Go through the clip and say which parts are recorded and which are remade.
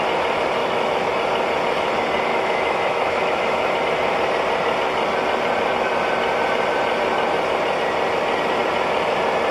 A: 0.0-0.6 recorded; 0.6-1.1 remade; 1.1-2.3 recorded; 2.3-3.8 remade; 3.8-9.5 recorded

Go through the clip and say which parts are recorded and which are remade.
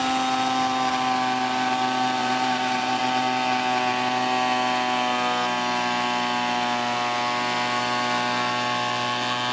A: 0.0-2.2 recorded; 2.2-3.0 remade; 3.0-9.5 recorded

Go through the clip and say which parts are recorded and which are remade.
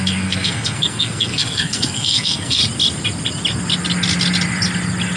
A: 0.0-2.6 remade; 2.6-5.2 recorded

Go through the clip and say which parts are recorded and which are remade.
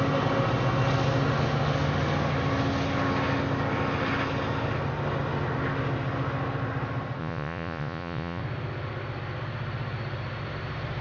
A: 0.0-7.2 recorded; 7.2-8.4 remade; 8.4-11.0 recorded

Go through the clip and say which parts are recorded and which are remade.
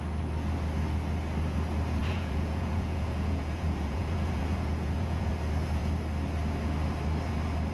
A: 0.0-2.0 recorded; 2.0-5.3 remade; 5.3-7.7 recorded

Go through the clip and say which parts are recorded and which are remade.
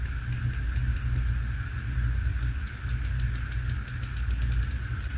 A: 0.0-5.2 recorded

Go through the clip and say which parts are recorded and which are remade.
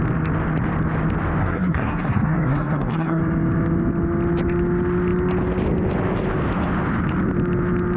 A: 0.0-1.4 recorded; 1.4-3.2 remade; 3.2-8.0 recorded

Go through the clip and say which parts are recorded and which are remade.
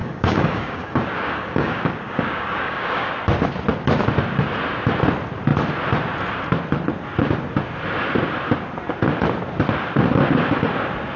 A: 0.0-3.1 remade; 3.1-11.2 recorded